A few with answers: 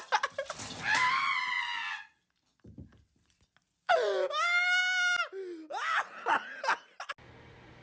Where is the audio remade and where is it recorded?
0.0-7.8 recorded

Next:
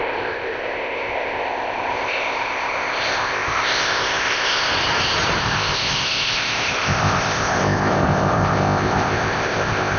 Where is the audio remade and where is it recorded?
0.0-4.7 remade; 4.7-5.4 recorded; 5.4-10.0 remade

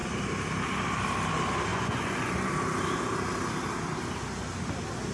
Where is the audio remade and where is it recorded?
0.0-1.7 recorded; 1.7-2.5 remade; 2.5-5.1 recorded

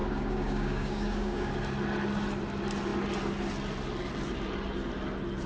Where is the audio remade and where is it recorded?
0.0-1.5 remade; 1.5-5.5 recorded

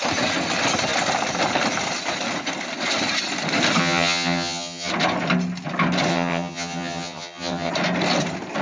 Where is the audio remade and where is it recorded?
0.0-3.8 recorded; 3.8-4.9 remade; 4.9-6.1 recorded; 6.1-7.7 remade; 7.7-8.6 recorded